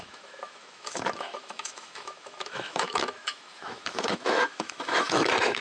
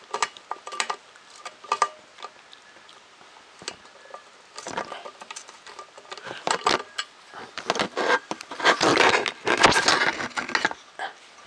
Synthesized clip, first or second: first